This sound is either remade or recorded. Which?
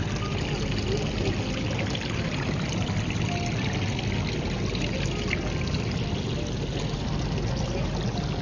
recorded